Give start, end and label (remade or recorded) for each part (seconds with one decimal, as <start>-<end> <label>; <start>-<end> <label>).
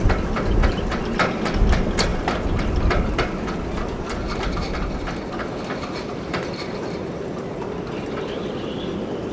0.0-9.3 recorded